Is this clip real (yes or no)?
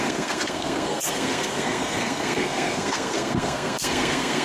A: no